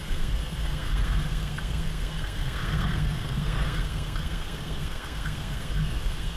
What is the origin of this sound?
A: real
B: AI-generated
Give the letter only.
B